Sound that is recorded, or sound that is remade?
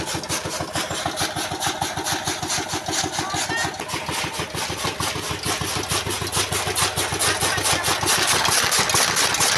recorded